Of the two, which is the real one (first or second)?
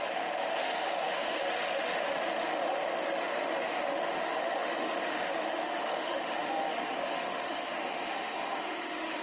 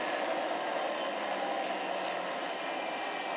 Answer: second